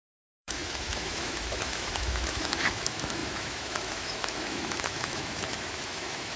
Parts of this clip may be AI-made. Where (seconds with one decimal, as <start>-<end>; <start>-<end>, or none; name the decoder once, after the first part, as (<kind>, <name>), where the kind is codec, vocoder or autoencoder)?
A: 0.0-6.4 (autoencoder, DAC-VAE)